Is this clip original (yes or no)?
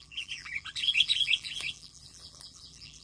no